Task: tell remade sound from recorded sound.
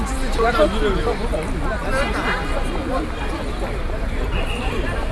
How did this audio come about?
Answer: recorded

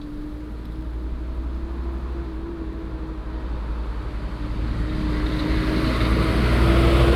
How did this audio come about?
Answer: recorded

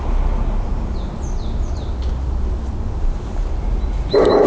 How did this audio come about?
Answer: recorded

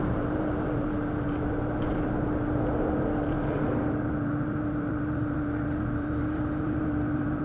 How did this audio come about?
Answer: remade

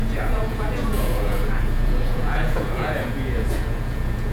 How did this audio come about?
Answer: remade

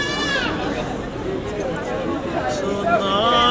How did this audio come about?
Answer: recorded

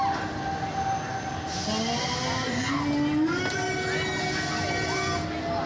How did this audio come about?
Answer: recorded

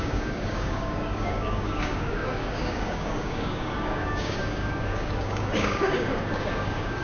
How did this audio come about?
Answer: remade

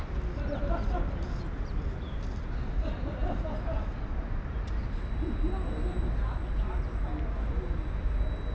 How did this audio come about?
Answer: recorded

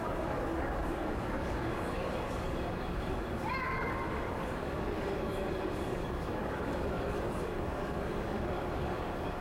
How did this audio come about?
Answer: remade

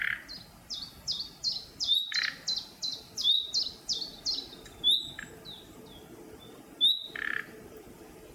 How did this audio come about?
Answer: recorded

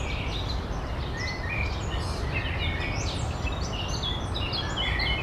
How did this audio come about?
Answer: recorded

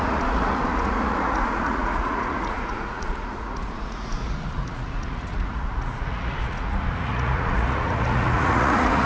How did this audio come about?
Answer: remade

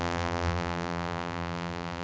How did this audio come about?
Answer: remade